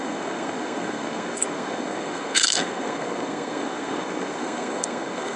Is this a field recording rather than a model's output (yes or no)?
no